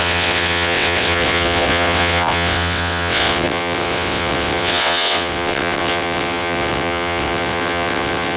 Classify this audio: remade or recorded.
remade